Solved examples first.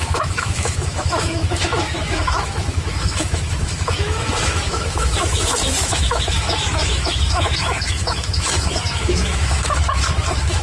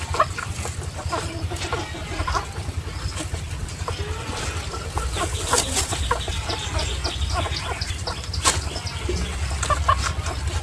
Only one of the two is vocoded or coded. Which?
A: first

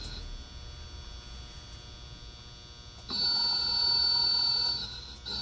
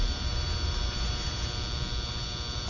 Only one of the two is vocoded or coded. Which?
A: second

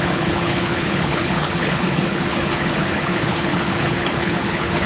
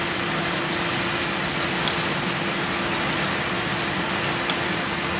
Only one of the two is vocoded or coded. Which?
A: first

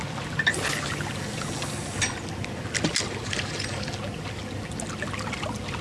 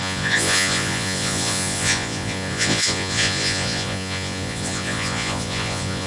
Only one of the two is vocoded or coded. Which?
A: second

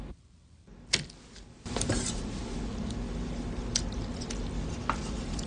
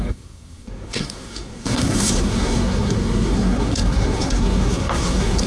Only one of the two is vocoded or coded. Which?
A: second